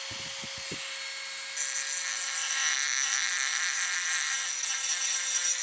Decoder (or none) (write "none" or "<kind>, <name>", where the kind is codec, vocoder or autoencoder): none